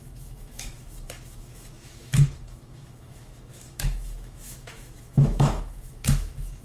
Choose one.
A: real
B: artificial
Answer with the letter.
B